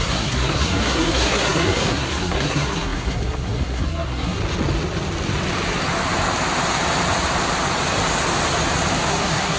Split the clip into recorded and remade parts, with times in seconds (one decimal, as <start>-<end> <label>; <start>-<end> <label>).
0.0-4.4 remade; 4.4-9.1 recorded; 9.1-9.6 remade

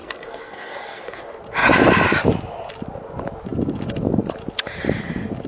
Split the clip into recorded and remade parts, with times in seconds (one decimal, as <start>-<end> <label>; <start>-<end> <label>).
0.0-1.2 remade; 1.2-5.5 recorded